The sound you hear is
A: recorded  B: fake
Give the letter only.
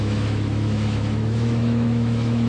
B